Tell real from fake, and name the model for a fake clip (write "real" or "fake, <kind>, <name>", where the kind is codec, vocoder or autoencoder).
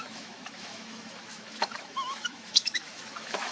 fake, autoencoder, DAC-VAE